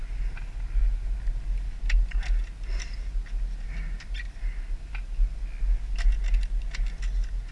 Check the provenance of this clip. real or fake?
real